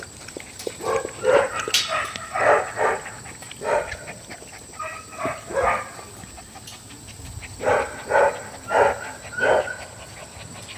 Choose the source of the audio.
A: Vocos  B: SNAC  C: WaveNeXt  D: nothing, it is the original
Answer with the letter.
D